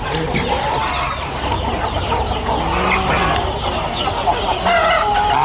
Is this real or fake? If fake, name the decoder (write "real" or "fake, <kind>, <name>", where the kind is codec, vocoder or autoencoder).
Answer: real